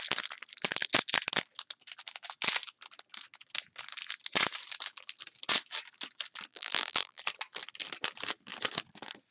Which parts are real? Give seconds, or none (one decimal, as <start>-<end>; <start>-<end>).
0.0-6.5; 7.2-9.3